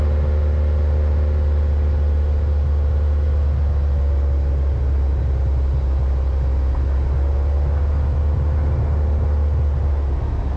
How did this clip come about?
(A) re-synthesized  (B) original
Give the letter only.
B